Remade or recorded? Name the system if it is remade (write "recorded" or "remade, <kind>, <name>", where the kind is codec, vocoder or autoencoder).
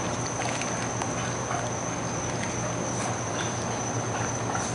recorded